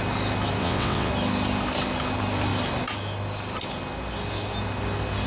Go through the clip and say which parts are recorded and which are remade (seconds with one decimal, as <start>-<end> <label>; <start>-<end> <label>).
0.0-0.6 recorded; 0.6-1.1 remade; 1.1-5.3 recorded